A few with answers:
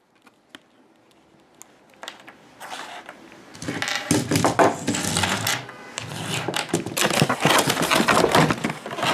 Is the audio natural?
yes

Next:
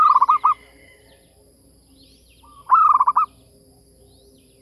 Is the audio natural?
yes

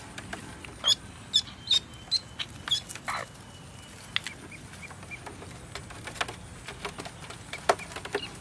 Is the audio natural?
yes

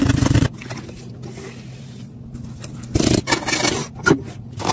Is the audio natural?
yes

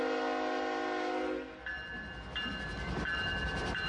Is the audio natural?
yes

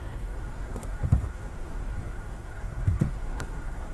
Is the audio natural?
no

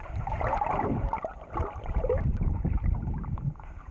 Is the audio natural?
yes